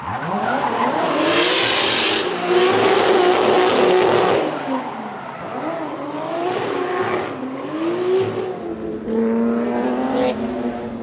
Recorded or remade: recorded